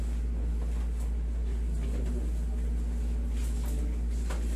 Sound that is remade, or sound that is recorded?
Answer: recorded